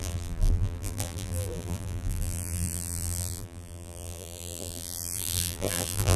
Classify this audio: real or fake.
fake